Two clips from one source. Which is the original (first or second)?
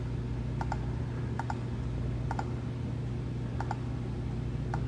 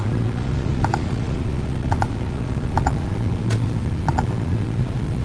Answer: first